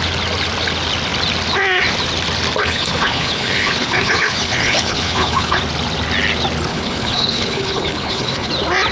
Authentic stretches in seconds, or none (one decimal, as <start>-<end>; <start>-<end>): 0.0-2.6; 5.6-6.7; 8.5-8.9